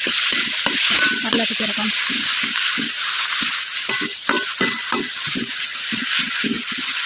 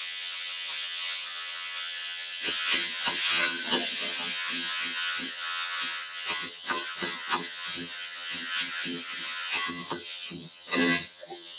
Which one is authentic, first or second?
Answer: first